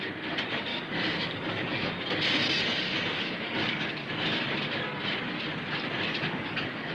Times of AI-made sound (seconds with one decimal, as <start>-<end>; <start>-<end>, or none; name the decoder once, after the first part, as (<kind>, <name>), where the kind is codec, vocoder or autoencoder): 0.7-1.9 (codec, DAC); 3.1-4.1; 6.1-6.9